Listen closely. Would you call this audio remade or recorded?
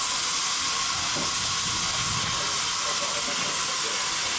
recorded